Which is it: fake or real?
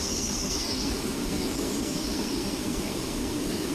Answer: fake